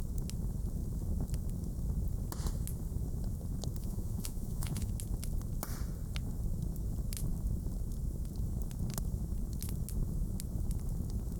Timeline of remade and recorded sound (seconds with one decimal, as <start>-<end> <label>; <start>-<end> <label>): 0.0-3.8 recorded; 3.8-4.9 remade; 4.9-11.4 recorded